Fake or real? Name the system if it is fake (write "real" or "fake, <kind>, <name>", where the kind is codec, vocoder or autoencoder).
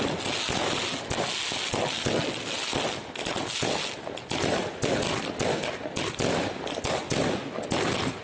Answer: real